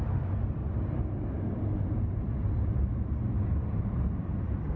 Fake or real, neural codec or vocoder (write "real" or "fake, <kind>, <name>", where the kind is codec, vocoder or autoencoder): real